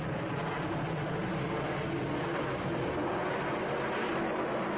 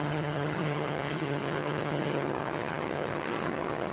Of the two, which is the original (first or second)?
first